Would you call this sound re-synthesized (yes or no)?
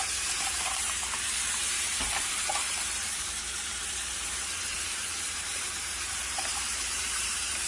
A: yes